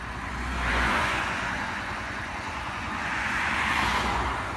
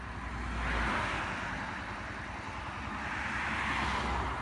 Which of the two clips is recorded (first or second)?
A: second